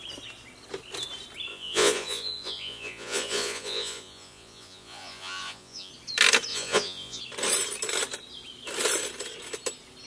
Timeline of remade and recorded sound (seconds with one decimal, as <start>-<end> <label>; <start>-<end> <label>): 0.0-1.5 recorded; 1.5-5.9 remade; 5.9-6.5 recorded; 6.5-7.2 remade; 7.2-10.1 recorded